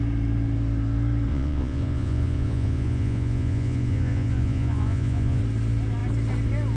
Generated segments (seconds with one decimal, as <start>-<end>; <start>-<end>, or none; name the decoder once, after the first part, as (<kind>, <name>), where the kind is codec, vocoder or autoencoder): 1.3-5.4 (vocoder, Vocos)